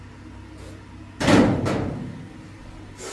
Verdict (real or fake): real